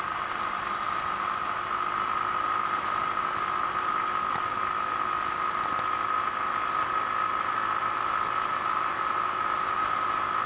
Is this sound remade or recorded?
recorded